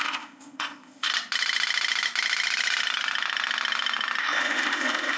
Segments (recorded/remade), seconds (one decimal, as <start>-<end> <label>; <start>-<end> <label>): 0.0-1.1 remade; 1.1-4.2 recorded; 4.2-5.2 remade